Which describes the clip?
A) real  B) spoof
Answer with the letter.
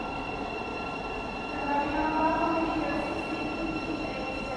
A